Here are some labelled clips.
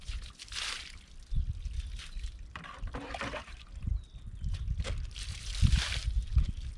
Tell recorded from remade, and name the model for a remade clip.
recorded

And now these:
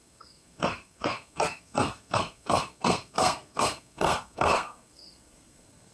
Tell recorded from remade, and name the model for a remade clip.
remade, codec, SNAC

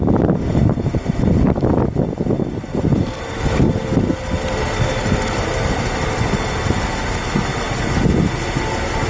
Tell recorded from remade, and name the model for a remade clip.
recorded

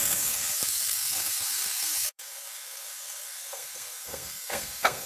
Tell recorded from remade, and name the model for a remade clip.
remade, codec, SNAC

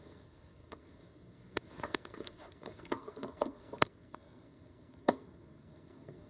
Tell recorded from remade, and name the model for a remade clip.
remade, codec, SNAC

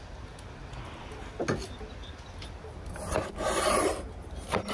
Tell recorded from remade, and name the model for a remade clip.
recorded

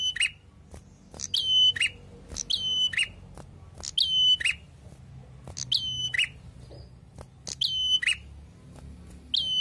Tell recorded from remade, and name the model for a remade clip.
recorded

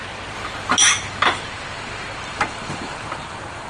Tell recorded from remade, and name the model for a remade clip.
recorded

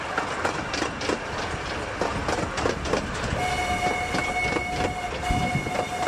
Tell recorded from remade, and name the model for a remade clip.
recorded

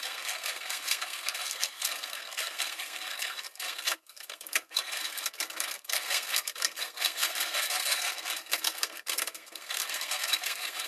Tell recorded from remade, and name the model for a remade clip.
remade, codec, SNAC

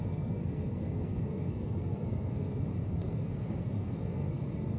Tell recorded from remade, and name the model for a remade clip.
remade, codec, SNAC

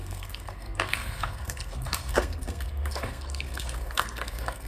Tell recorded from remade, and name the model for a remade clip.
remade, codec, SNAC